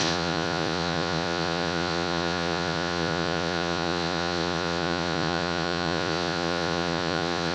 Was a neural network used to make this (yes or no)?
yes